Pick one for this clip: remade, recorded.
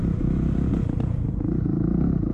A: recorded